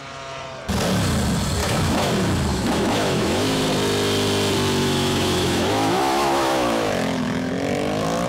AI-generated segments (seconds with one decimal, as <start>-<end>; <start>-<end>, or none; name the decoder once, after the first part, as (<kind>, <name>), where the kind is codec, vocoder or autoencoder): 1.6-2.1 (autoencoder, DAC-VAE); 2.5-3.6; 4.8-7.5